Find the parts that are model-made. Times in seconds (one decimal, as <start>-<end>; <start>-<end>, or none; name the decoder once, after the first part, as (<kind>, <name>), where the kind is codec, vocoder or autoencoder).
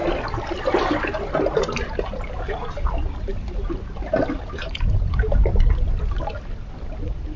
0.0-1.2 (vocoder, BigVGAN v2); 3.3-5.3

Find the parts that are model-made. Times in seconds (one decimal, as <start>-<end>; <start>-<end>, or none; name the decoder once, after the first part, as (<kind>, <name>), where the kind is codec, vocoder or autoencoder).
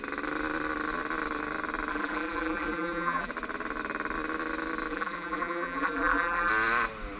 1.9-3.3 (vocoder, BigVGAN v2); 4.9-6.5